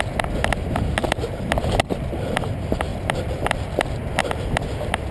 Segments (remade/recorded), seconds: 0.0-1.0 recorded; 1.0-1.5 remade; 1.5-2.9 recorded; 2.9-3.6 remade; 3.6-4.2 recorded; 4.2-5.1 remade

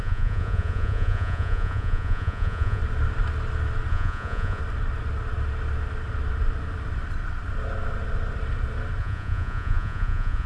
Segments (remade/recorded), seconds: 0.0-2.8 remade; 2.8-3.9 recorded; 3.9-4.6 remade; 4.6-9.0 recorded; 9.0-10.5 remade

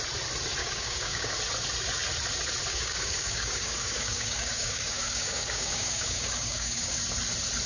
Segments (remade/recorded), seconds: 0.0-0.6 recorded; 0.6-1.3 remade; 1.3-2.7 recorded; 2.7-7.0 remade; 7.0-7.7 recorded

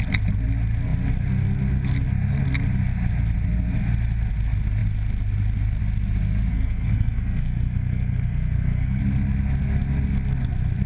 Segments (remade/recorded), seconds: 0.0-6.5 recorded; 6.5-9.0 remade; 9.0-10.9 recorded

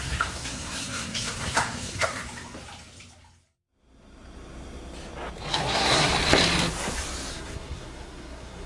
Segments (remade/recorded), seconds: 0.0-2.2 remade; 2.2-5.5 recorded; 5.5-6.1 remade; 6.1-7.3 recorded; 7.3-8.7 remade

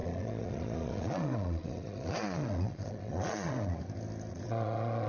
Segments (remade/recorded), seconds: 0.0-3.8 remade; 3.8-4.3 recorded; 4.3-5.1 remade

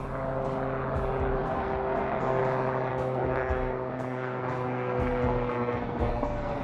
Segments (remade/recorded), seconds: 0.0-1.4 recorded; 1.4-2.4 remade; 2.4-2.9 recorded; 2.9-6.6 remade

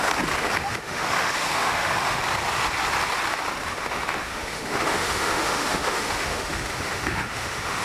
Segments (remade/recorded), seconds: 0.0-0.6 recorded; 0.6-2.2 remade; 2.2-3.7 recorded; 3.7-7.8 remade